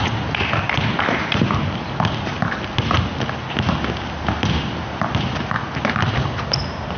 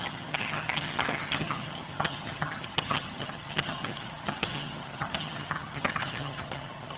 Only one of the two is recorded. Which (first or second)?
first